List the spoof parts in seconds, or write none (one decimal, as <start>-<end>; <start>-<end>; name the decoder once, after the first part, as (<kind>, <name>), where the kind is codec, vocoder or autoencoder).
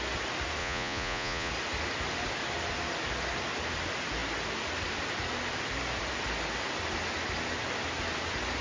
0.6-1.5 (vocoder, Vocos)